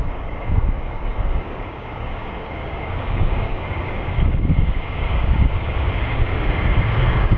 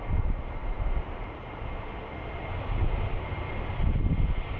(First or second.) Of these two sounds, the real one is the second